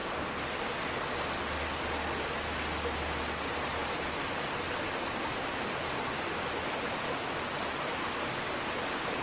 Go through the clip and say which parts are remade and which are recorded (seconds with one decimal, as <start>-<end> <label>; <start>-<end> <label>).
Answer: 0.0-9.2 recorded